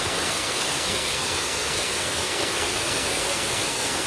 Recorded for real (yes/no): no